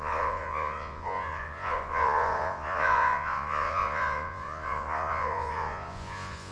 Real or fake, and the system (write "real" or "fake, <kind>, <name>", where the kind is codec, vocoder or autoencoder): fake, vocoder, Vocos